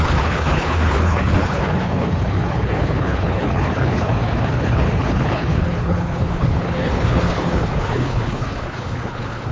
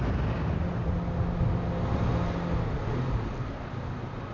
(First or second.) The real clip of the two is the second